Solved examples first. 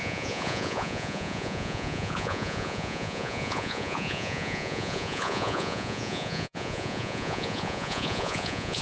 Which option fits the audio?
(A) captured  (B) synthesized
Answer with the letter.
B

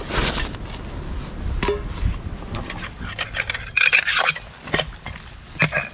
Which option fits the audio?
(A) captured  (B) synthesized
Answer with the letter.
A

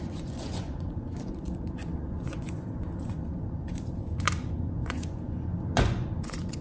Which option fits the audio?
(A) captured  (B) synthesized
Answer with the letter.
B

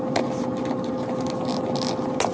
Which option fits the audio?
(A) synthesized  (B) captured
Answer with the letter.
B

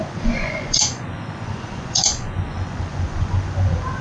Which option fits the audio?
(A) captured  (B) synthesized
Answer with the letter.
B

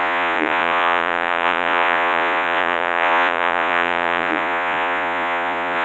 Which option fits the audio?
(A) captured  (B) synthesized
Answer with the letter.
B